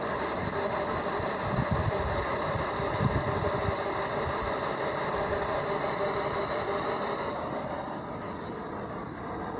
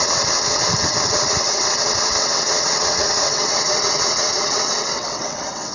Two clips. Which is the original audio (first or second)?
first